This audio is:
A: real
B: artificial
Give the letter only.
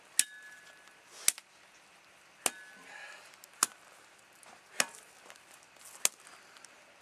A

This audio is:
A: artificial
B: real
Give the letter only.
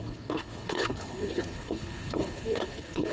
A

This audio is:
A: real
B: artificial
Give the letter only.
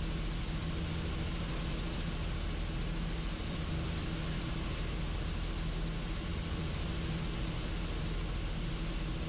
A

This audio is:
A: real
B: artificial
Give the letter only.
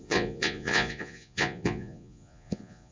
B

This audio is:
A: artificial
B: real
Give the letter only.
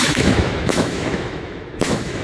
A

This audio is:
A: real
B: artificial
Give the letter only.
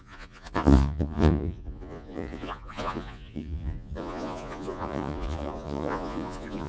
B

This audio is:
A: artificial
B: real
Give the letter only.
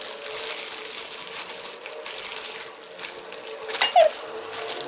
B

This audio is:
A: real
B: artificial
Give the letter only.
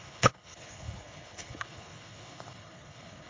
B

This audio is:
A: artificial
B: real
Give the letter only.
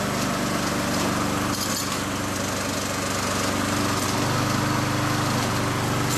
B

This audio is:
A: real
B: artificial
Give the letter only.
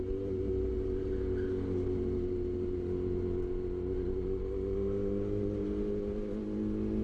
A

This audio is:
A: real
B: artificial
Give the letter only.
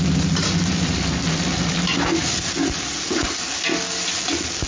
A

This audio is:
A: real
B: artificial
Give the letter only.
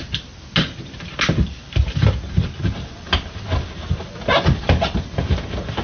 A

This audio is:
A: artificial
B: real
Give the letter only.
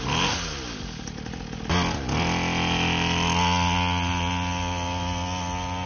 B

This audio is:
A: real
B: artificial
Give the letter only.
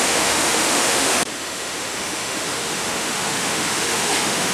B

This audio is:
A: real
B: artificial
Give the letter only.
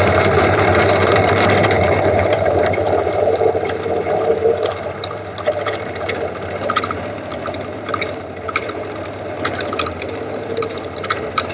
B